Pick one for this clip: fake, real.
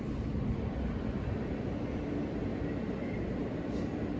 fake